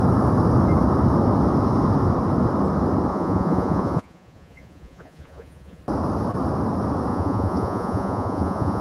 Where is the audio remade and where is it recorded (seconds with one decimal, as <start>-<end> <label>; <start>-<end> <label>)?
0.0-3.1 recorded; 3.1-5.8 remade; 5.8-7.1 recorded; 7.1-8.8 remade